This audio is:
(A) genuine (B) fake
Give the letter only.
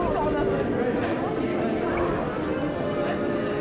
A